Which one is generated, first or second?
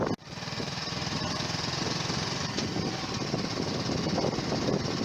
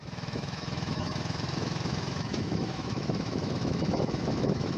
second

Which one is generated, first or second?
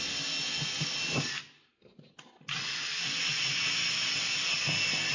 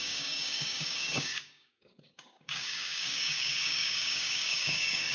second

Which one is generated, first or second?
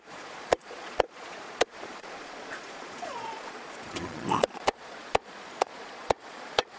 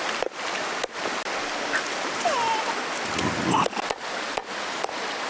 first